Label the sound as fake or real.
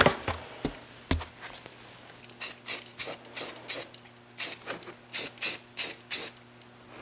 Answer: real